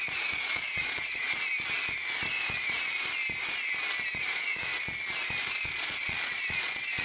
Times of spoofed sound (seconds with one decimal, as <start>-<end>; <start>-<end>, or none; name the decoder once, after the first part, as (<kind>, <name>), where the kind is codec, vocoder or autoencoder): 0.0-1.4 (vocoder, Vocos); 4.3-4.7; 5.5-7.0